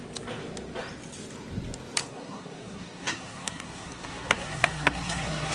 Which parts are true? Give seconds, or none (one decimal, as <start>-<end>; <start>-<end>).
0.0-2.0